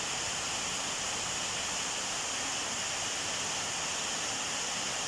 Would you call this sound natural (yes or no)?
yes